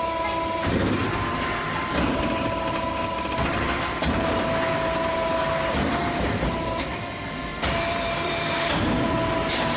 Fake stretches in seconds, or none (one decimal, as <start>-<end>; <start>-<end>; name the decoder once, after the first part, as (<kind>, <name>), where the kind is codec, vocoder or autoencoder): 7.5-9.1 (vocoder, BigVGAN v2)